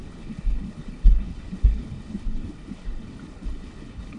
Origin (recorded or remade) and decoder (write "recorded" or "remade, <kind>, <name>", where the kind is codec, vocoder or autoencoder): remade, codec, HILCodec